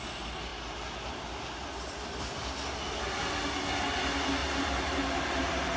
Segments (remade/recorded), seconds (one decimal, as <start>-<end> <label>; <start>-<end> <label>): 0.0-5.8 recorded

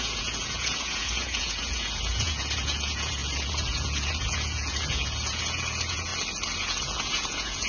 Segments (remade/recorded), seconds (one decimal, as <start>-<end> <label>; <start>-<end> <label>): 0.0-6.1 remade; 6.1-6.6 recorded; 6.6-7.7 remade

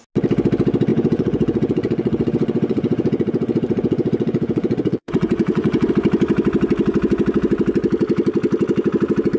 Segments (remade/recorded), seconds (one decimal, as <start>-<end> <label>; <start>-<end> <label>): 0.0-0.9 recorded; 0.9-5.9 remade; 5.9-9.4 recorded

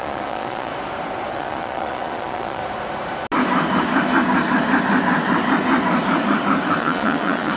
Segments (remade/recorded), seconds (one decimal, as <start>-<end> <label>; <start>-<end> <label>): 0.0-0.7 remade; 0.7-1.3 recorded; 1.3-2.6 remade; 2.6-6.8 recorded; 6.8-7.6 remade

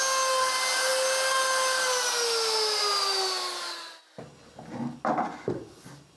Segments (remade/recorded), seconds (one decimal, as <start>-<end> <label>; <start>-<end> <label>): 0.0-6.2 recorded